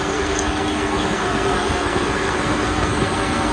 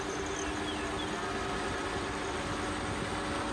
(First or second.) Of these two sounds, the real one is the second